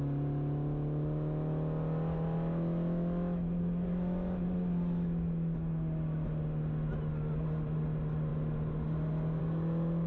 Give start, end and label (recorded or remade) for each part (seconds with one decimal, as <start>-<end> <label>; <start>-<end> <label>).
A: 0.0-10.1 recorded